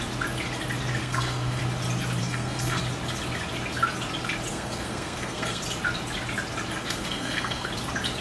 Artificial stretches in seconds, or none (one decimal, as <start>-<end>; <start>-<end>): 1.0-1.6; 2.2-2.8; 4.5-5.6; 6.8-7.7